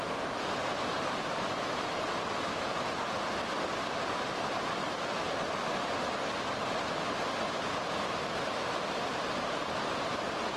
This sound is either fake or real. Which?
real